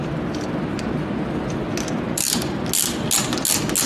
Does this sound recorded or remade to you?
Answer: recorded